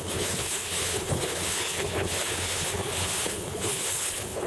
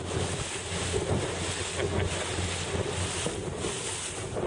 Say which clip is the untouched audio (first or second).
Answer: second